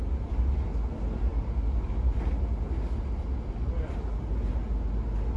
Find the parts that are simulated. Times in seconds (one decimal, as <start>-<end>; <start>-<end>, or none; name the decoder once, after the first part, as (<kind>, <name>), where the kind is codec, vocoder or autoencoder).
none